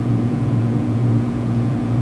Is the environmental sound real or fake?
fake